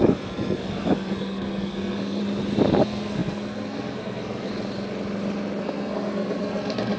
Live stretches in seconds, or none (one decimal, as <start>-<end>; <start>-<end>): 2.2-2.8; 4.5-5.6